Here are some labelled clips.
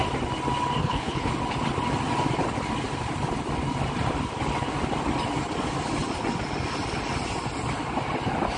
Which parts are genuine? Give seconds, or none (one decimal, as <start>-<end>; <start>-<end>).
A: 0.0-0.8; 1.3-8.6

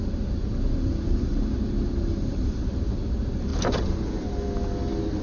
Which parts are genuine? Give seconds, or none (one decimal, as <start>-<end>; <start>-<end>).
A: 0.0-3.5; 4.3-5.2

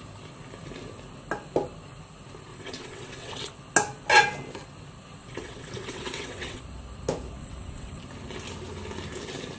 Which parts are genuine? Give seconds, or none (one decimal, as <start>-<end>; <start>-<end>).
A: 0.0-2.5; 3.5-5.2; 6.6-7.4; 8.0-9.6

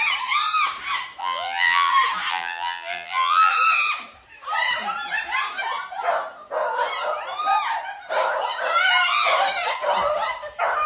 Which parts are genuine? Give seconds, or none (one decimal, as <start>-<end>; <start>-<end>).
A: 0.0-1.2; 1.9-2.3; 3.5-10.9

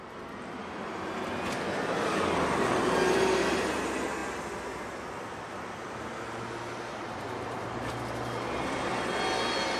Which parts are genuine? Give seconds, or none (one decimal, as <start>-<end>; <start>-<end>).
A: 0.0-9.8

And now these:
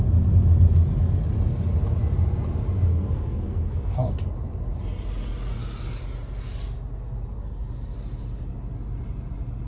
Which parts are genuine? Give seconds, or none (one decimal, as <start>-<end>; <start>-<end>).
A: 0.0-2.9; 4.1-9.7

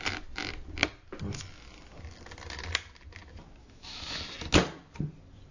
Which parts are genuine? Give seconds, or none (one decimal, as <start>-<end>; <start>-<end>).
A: 0.0-3.6; 4.2-5.5